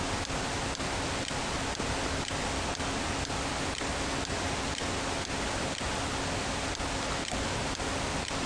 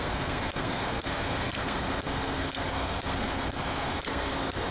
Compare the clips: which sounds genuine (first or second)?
first